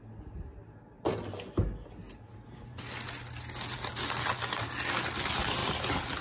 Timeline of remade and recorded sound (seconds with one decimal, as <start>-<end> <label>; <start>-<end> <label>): 0.0-6.2 recorded